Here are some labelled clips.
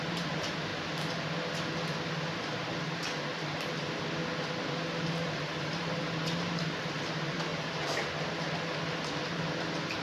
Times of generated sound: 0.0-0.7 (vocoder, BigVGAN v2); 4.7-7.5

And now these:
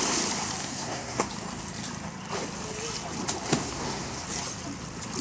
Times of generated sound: 0.6-1.3 (codec, SNAC); 3.5-4.2

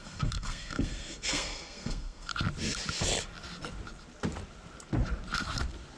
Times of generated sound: 0.0-2.3 (codec, SNAC)

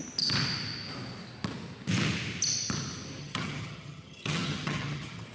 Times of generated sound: 3.2-5.3 (vocoder, HiFi-GAN)

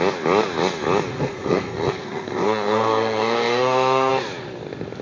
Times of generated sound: 1.1-4.1 (codec, SNAC)